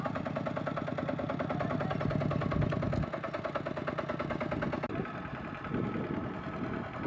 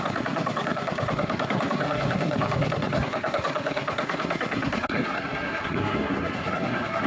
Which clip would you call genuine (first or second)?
first